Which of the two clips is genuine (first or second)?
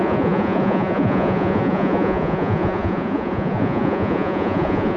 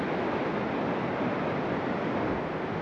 second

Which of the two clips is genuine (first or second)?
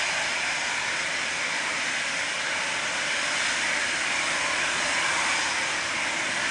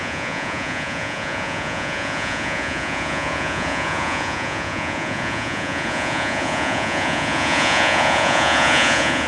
first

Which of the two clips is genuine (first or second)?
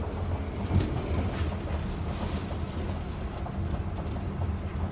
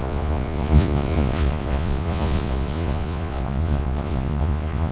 first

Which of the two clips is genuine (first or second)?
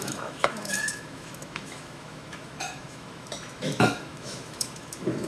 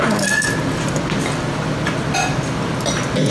second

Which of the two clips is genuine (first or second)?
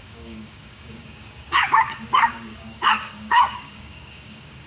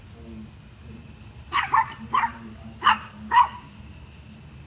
second